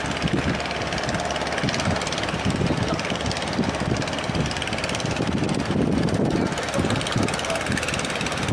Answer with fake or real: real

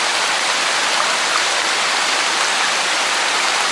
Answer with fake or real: real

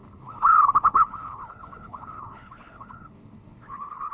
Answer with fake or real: fake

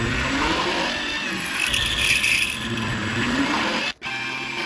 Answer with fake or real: real